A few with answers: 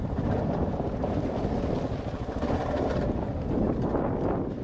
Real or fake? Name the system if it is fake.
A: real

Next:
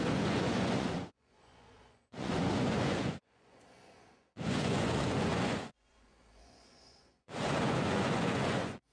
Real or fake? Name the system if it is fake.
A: fake, vocoder, Vocos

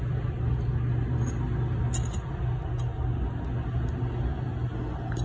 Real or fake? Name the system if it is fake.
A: real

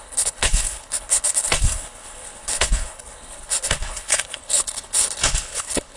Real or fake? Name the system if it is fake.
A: fake, codec, HILCodec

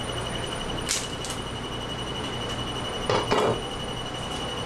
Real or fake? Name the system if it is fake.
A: real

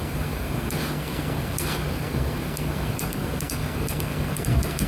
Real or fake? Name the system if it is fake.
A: fake, codec, SNAC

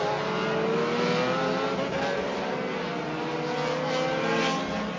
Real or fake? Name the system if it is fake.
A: real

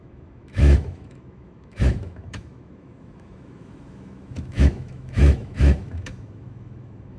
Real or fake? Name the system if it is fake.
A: fake, autoencoder, DAC-VAE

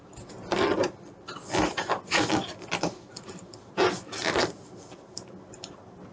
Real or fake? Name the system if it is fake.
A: real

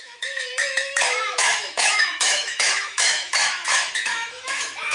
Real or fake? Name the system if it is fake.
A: fake, autoencoder, DAC-VAE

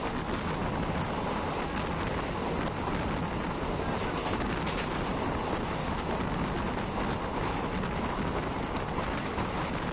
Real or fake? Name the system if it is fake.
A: real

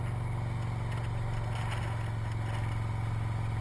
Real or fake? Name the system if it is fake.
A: real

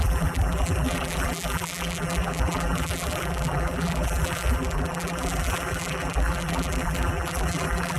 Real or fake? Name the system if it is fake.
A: fake, vocoder, BigVGAN v2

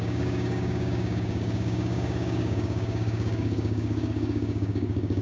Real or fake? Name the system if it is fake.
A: fake, codec, DAC